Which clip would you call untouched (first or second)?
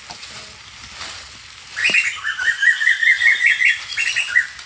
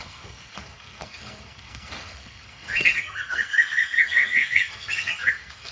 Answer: first